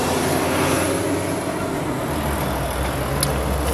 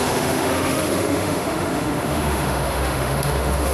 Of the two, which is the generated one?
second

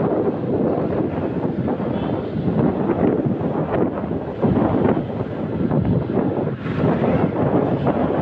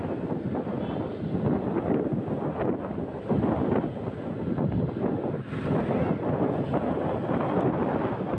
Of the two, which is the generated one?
first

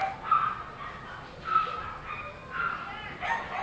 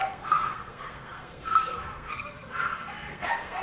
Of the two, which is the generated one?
second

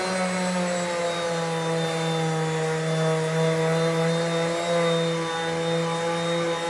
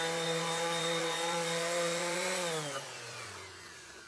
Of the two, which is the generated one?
second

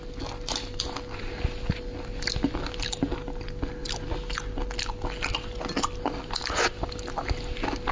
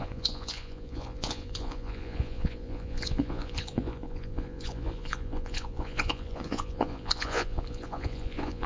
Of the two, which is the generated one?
second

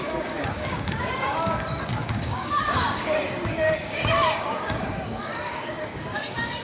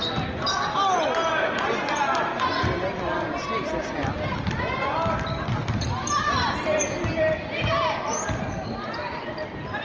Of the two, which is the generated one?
first